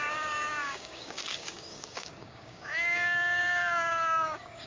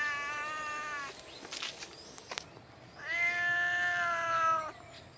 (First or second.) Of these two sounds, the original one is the second